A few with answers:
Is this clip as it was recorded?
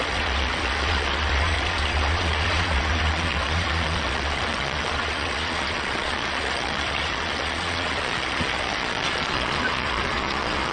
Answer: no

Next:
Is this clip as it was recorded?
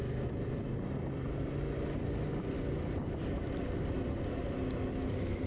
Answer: yes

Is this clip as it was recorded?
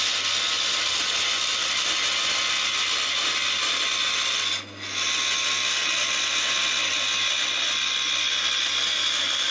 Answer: yes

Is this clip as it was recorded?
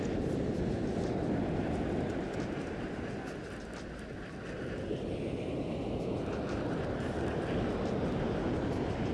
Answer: yes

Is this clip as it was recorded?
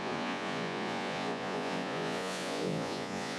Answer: no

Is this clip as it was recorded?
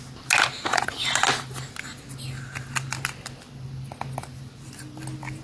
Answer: yes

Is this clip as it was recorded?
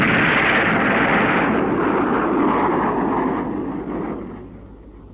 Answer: yes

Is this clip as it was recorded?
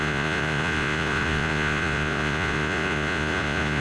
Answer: no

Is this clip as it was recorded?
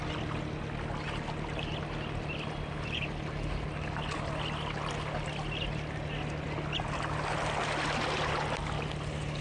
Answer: yes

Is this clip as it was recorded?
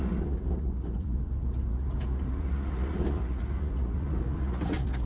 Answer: no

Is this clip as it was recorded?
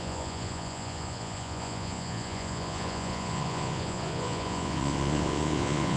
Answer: no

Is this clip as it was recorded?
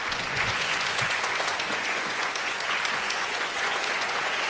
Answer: no